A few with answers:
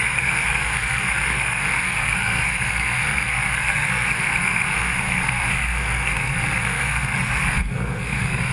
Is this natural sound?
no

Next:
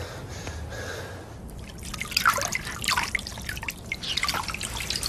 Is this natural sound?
yes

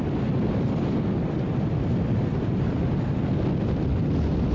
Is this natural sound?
yes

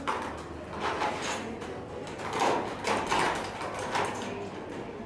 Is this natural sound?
yes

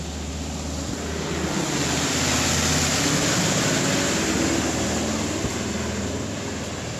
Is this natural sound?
yes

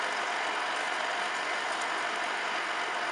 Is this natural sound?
yes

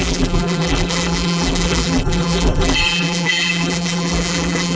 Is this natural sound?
no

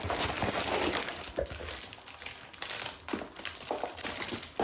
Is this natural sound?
yes